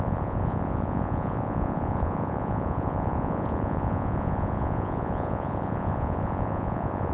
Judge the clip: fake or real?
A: fake